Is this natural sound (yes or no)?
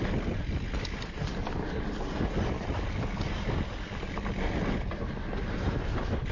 yes